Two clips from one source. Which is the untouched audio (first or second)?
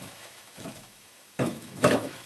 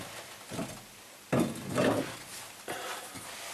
second